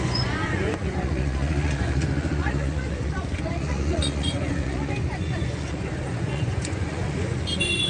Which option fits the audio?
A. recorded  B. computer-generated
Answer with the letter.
B